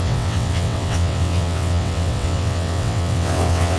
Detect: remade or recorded remade